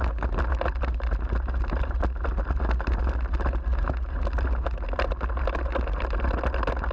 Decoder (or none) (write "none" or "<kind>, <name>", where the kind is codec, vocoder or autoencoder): none